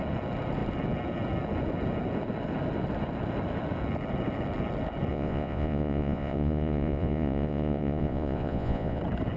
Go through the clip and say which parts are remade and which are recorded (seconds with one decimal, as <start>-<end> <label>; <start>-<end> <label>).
0.0-5.1 recorded; 5.1-9.0 remade; 9.0-9.4 recorded